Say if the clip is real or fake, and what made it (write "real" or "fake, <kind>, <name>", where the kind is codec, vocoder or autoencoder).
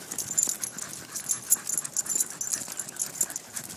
real